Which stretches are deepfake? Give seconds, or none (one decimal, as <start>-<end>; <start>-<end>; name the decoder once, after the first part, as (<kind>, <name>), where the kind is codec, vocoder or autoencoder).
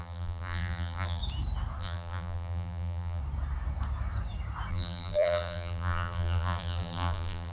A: 0.0-1.2 (vocoder, BigVGAN v2); 1.8-3.2; 4.7-7.5